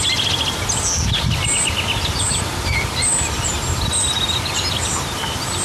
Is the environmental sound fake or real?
real